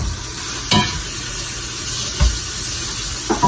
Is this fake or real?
real